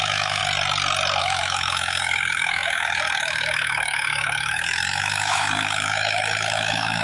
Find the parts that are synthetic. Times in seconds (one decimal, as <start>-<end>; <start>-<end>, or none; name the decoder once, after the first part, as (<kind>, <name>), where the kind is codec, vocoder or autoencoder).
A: 0.0-0.4 (autoencoder, DAC-VAE); 1.2-7.0